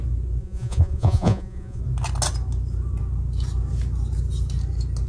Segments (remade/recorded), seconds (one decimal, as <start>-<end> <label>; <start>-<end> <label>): 0.0-0.4 recorded; 0.4-1.8 remade; 1.8-5.1 recorded

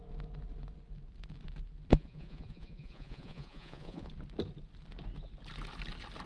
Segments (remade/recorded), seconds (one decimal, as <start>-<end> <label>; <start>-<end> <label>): 0.0-1.9 recorded; 1.9-4.1 remade; 4.1-6.3 recorded

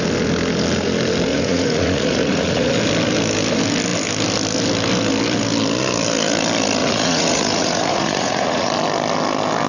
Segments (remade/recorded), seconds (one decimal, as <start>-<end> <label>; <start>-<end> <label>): 0.0-1.3 recorded; 1.3-2.7 remade; 2.7-6.8 recorded; 6.8-8.7 remade; 8.7-9.7 recorded

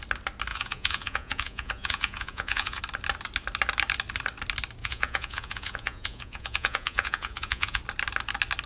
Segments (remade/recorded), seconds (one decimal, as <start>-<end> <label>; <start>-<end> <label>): 0.0-0.5 recorded; 0.5-2.8 remade; 2.8-4.8 recorded; 4.8-7.8 remade; 7.8-8.7 recorded

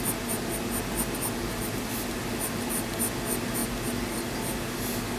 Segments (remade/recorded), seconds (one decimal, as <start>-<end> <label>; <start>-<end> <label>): 0.0-5.2 recorded

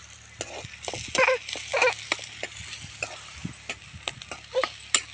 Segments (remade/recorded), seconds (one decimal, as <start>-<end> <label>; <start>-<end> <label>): 0.0-5.1 recorded

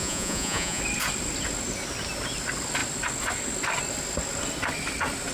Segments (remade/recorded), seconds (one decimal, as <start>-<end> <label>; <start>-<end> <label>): 0.0-0.8 remade; 0.8-5.3 recorded